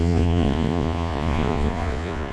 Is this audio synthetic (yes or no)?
yes